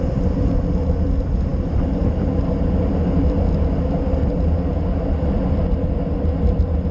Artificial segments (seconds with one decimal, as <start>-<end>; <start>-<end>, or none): none